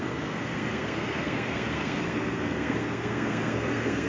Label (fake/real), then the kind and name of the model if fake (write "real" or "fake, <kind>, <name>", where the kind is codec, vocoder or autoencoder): fake, codec, SNAC